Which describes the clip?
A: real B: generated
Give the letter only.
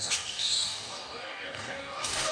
B